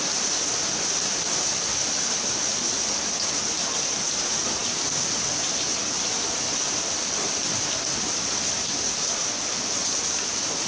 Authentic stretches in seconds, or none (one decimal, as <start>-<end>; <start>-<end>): 0.0-10.7